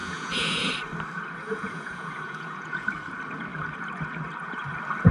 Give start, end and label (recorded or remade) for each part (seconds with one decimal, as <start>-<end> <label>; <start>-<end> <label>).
0.0-0.7 remade; 0.7-1.5 recorded; 1.5-2.9 remade; 2.9-5.1 recorded